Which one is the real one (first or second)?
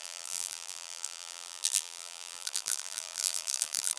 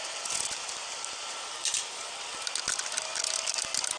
second